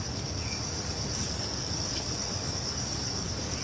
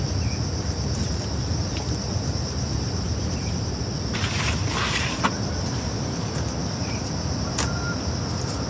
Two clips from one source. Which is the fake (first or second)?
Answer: first